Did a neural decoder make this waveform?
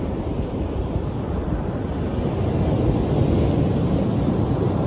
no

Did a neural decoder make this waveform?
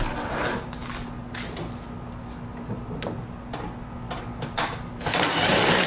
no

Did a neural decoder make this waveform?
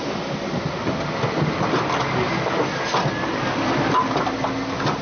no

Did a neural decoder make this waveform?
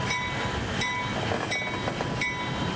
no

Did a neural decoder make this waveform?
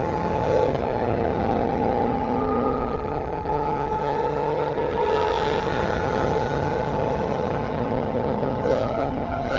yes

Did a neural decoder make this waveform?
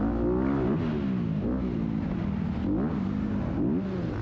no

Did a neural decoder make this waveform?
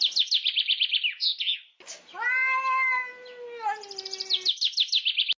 no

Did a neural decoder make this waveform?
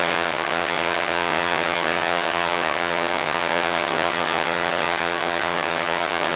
yes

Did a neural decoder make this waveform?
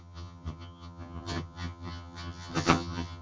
yes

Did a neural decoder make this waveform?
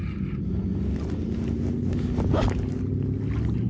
no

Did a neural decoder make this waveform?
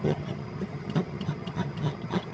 yes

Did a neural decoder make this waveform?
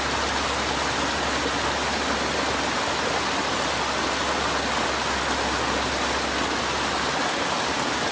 no